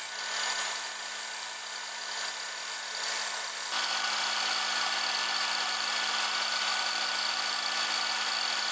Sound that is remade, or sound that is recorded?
recorded